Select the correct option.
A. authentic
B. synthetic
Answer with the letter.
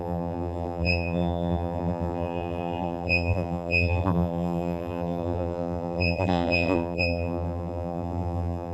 B